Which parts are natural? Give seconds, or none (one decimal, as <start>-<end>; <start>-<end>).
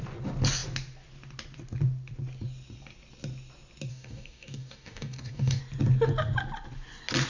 0.0-3.9; 5.6-7.3